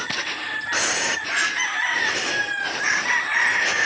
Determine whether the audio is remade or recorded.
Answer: recorded